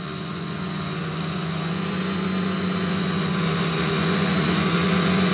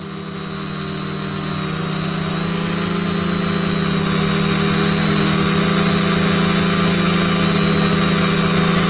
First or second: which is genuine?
second